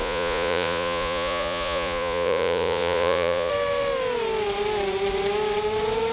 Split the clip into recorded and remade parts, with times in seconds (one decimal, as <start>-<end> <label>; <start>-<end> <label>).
0.0-3.5 remade; 3.5-6.1 recorded